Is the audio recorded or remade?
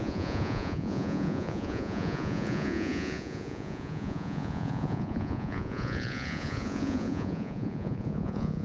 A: remade